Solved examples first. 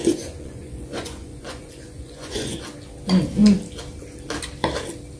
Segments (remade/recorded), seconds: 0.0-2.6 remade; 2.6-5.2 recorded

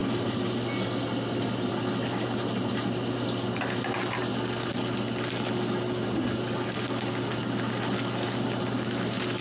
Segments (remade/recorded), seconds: 0.0-9.4 recorded

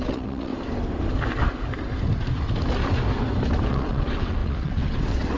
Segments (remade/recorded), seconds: 0.0-0.5 remade; 0.5-3.7 recorded; 3.7-5.4 remade

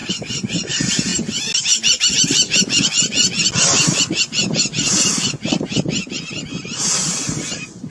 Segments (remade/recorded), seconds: 0.0-7.9 recorded